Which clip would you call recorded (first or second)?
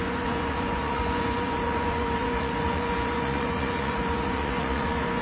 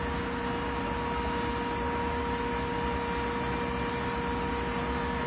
second